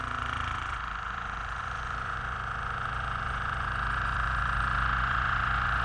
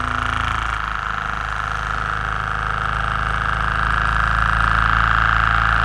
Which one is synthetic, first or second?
first